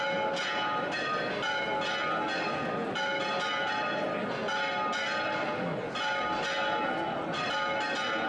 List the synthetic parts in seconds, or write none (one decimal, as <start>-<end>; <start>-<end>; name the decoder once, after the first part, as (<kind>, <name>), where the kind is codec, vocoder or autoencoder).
none